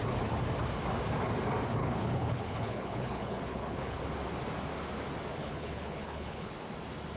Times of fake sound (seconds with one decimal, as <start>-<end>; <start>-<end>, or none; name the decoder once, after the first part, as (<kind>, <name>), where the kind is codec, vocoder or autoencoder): 1.8-4.0 (codec, HILCodec); 5.4-6.5